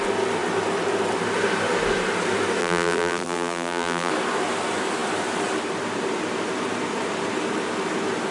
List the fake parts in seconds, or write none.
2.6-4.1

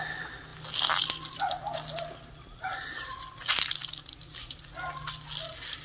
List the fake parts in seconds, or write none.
none

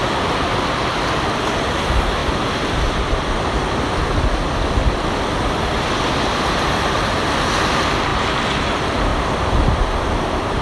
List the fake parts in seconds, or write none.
none